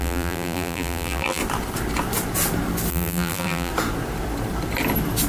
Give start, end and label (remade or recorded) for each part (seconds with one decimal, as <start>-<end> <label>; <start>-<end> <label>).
0.0-1.4 remade; 1.4-2.9 recorded; 2.9-3.7 remade; 3.7-5.3 recorded